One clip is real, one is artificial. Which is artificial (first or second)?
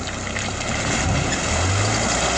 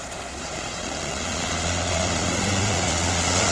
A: second